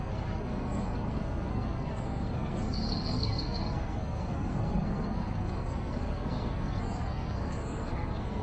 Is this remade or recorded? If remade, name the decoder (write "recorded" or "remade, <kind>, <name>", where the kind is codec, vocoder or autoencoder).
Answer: remade, codec, SNAC